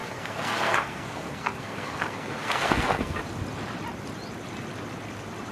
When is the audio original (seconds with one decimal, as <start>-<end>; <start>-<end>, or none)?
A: 3.2-5.5